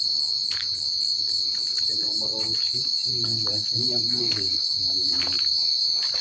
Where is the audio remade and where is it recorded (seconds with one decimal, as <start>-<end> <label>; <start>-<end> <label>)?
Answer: 0.0-1.1 recorded; 1.1-2.2 remade; 2.2-3.0 recorded; 3.0-4.2 remade; 4.2-6.2 recorded